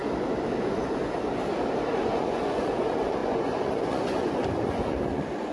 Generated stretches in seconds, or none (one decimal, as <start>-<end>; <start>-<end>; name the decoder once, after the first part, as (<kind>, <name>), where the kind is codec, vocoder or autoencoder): 0.6-1.0 (vocoder, Vocos); 2.0-5.5